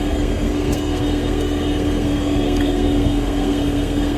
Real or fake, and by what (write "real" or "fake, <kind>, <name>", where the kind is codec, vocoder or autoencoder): fake, codec, SNAC